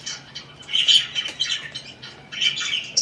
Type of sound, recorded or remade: recorded